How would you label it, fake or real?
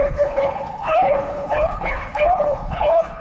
fake